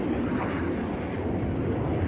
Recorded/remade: recorded